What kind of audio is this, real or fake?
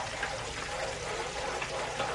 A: real